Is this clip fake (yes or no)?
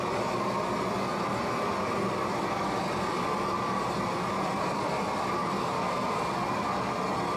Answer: no